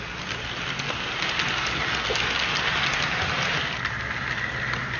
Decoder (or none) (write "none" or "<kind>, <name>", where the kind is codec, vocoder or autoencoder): none